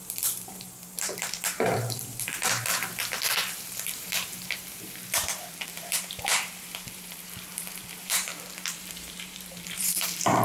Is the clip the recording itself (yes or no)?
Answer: no